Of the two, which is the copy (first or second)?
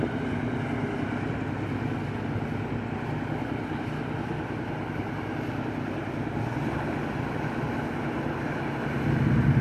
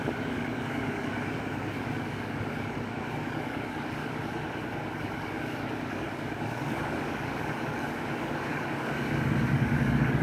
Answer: second